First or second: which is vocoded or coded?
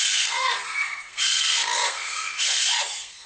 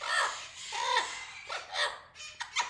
first